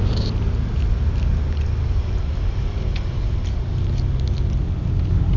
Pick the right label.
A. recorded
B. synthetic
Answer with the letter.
A